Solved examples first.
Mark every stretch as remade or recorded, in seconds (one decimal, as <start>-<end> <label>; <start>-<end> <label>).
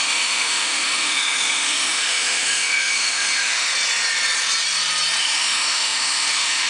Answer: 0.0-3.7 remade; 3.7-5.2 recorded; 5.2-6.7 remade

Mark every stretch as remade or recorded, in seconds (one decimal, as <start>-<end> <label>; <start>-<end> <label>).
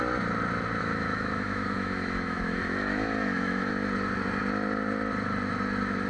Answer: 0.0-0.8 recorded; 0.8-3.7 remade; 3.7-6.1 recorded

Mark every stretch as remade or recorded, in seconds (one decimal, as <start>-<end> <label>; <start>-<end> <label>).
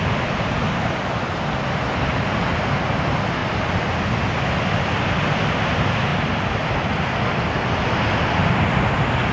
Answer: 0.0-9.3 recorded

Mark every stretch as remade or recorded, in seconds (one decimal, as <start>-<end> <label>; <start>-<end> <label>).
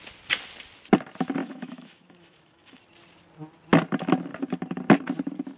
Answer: 0.0-1.4 recorded; 1.4-2.8 remade; 2.8-5.6 recorded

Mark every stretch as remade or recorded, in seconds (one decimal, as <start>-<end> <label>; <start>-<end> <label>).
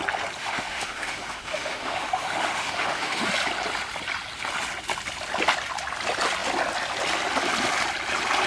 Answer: 0.0-0.4 recorded; 0.4-3.3 remade; 3.3-8.5 recorded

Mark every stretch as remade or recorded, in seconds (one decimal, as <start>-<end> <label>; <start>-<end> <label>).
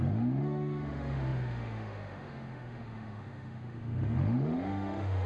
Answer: 0.0-5.3 remade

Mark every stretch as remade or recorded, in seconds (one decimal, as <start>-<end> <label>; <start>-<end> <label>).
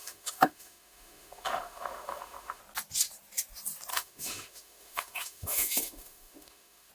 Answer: 0.0-2.6 remade; 2.6-3.9 recorded; 3.9-6.9 remade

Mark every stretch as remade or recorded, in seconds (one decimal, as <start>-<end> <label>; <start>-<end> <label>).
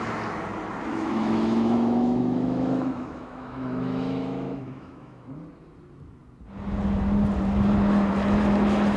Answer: 0.0-0.9 recorded; 0.9-5.3 remade; 5.3-9.0 recorded